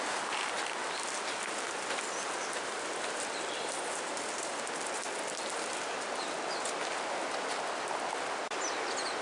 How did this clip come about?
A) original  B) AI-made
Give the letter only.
A